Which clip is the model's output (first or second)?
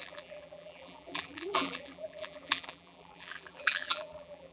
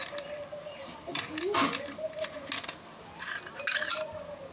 first